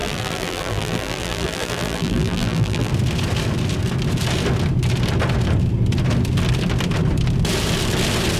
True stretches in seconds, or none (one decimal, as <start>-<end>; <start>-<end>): 2.9-8.4